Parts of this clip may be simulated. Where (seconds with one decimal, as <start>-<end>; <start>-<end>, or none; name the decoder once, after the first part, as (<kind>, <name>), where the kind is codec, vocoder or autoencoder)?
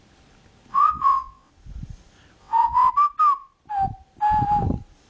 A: 0.7-1.5 (vocoder, WaveNeXt); 2.4-2.9